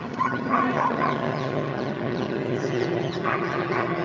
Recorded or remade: remade